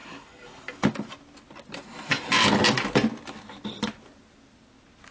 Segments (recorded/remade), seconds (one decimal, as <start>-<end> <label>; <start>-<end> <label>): 0.0-5.1 recorded